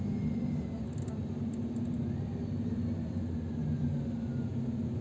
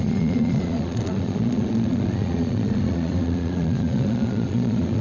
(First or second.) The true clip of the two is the first